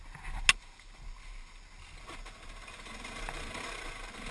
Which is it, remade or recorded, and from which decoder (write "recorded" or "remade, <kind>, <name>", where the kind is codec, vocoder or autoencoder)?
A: recorded